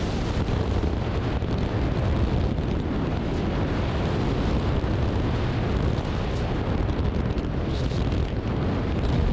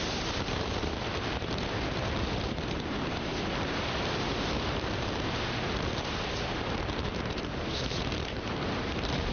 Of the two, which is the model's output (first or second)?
second